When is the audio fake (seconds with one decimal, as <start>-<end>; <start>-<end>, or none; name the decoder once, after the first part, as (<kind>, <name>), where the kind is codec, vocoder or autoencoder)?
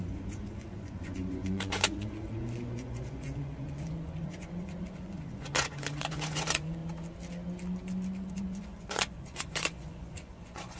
0.0-6.8 (vocoder, Vocos); 8.3-10.8